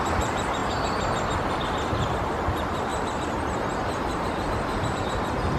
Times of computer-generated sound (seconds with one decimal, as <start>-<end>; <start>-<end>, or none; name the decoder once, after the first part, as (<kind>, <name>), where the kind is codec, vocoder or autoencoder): 0.0-0.6 (vocoder, BigVGAN v2); 2.0-5.6